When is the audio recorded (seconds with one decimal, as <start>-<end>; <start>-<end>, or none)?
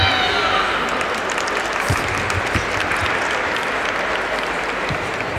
0.0-5.4